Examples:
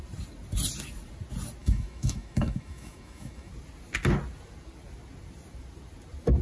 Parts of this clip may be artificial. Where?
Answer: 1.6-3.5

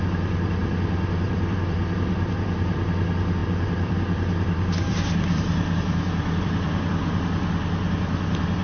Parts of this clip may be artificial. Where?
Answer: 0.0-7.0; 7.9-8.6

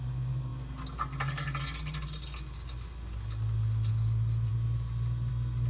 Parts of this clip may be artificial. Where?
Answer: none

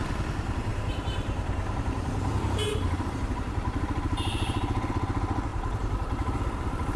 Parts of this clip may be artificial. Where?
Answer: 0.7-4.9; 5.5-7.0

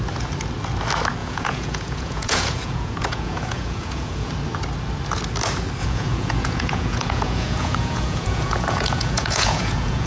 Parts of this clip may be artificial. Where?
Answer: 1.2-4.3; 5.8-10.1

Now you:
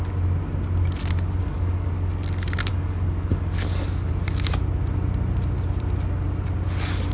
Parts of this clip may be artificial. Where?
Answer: 1.4-1.9; 2.7-4.1

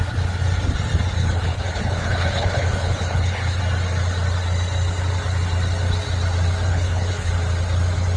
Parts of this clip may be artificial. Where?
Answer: 1.2-3.6; 6.7-7.3

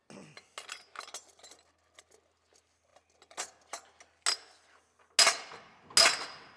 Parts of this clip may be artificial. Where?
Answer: none